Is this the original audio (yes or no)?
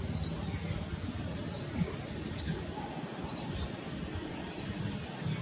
yes